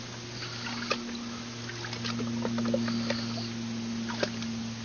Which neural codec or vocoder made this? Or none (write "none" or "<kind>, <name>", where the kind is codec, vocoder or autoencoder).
none